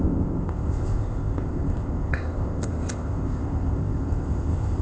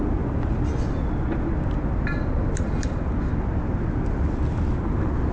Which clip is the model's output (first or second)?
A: first